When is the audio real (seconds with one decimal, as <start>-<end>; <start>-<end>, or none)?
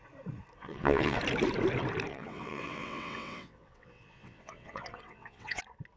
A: 0.0-0.6; 1.2-2.1; 5.6-6.0